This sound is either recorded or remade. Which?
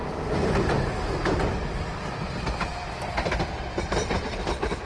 recorded